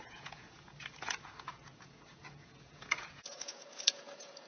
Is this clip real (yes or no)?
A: no